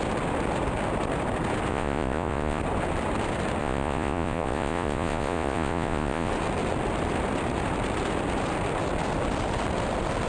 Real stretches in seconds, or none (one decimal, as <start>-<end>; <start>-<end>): 0.0-1.7; 2.6-3.6; 6.3-10.3